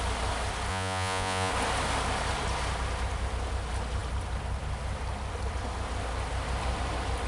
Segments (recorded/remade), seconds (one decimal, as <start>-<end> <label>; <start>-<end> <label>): 0.0-0.7 recorded; 0.7-1.5 remade; 1.5-7.3 recorded